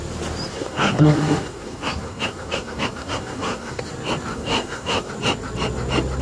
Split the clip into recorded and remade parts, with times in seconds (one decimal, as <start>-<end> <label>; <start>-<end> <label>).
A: 0.0-0.5 recorded; 0.5-3.8 remade; 3.8-4.3 recorded; 4.3-5.1 remade; 5.1-6.2 recorded

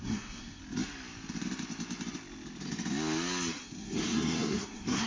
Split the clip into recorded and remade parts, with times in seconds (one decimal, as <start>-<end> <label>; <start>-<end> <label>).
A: 0.0-0.6 remade; 0.6-3.6 recorded; 3.6-5.1 remade